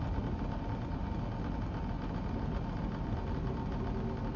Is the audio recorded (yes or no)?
yes